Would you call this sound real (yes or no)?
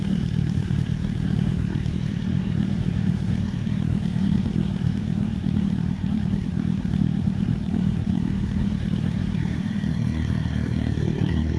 no